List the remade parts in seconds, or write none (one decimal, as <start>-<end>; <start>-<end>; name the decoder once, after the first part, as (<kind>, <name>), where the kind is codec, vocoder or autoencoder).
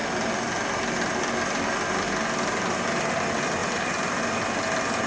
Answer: 3.6-4.2 (vocoder, BigVGAN v2)